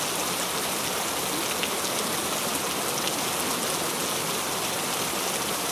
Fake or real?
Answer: real